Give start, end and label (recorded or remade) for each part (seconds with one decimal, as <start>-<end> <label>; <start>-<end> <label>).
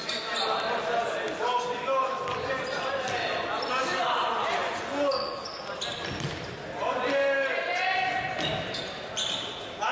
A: 0.0-4.6 recorded; 4.6-5.5 remade; 5.5-9.9 recorded